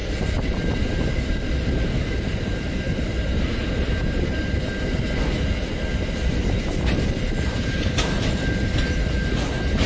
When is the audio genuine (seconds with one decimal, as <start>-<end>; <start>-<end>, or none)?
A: 0.0-0.9; 4.3-6.2